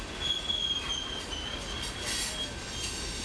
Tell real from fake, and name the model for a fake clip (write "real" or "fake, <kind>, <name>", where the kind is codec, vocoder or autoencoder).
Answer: real